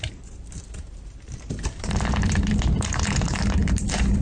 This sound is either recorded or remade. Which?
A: remade